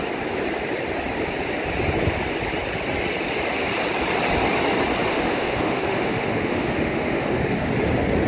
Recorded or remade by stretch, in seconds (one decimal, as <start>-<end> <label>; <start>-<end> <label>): 0.0-5.1 recorded; 5.1-7.7 remade; 7.7-8.3 recorded